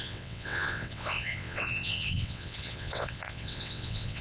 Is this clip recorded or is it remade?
remade